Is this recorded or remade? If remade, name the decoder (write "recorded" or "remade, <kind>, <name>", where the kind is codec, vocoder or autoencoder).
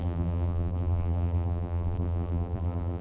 remade, vocoder, BigVGAN v2